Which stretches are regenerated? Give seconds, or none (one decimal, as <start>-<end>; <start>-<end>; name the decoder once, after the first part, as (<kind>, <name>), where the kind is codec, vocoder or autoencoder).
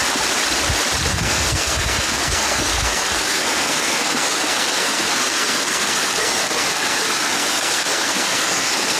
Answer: 1.1-9.0 (codec, SNAC)